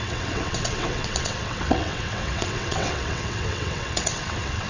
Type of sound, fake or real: fake